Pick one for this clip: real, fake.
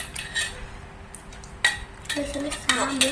real